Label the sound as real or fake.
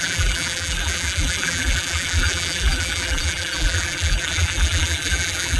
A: fake